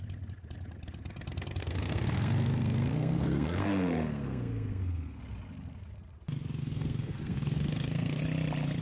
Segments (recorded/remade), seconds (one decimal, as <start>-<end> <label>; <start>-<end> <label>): 0.0-1.6 recorded; 1.6-5.2 remade; 5.2-6.6 recorded; 6.6-8.2 remade; 8.2-8.8 recorded